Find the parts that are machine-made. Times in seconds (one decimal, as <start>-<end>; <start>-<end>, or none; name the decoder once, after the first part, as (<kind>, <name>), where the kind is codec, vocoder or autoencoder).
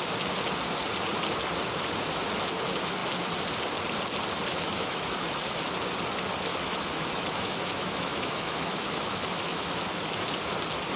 4.5-5.4 (autoencoder, DAC-VAE); 6.5-10.3